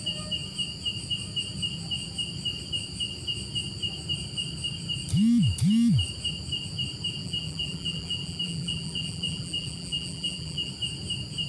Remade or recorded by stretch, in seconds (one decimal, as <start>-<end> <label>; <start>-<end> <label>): 0.0-7.2 recorded; 7.2-10.7 remade; 10.7-11.5 recorded